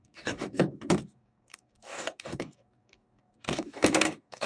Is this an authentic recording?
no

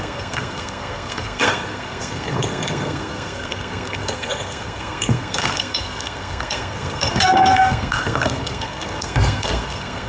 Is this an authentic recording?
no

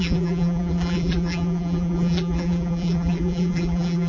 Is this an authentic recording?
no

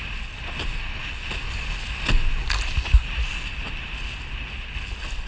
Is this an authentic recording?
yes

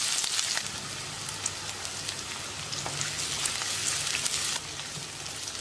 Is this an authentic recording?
yes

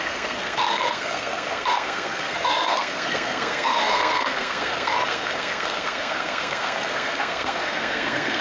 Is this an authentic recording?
no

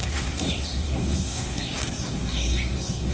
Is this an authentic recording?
no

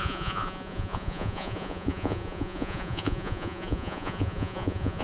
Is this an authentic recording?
no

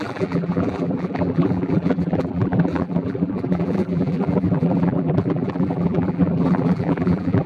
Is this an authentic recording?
no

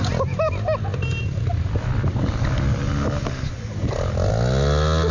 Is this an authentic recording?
yes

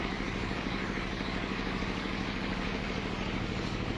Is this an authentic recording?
no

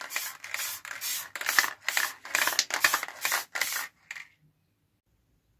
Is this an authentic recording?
yes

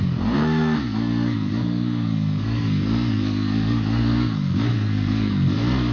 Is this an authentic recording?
no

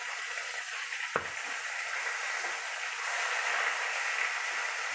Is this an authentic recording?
yes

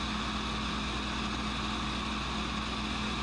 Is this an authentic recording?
yes